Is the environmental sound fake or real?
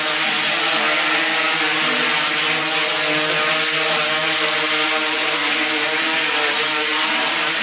real